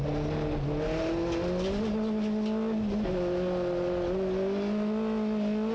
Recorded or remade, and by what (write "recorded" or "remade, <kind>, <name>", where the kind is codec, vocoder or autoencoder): recorded